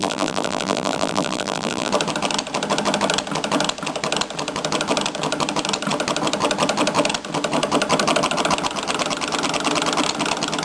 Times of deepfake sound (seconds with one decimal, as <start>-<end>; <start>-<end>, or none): 0.0-1.9